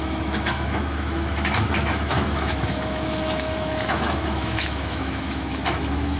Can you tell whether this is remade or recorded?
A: remade